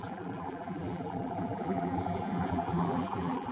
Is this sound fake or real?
fake